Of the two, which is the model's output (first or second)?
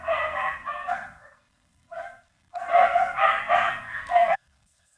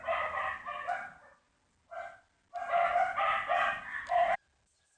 first